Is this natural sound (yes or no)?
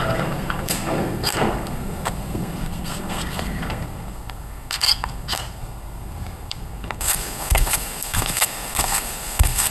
no